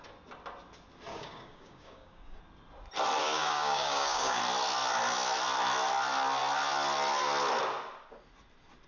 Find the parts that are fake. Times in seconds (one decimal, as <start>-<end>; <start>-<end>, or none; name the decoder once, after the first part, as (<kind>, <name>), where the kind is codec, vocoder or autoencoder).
1.1-2.4 (codec, DAC); 3.2-4.4